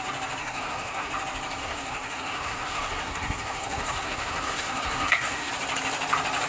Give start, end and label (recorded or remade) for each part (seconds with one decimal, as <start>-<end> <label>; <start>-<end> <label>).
0.0-0.4 recorded; 0.4-1.1 remade; 1.1-1.6 recorded; 1.6-5.5 remade; 5.5-6.5 recorded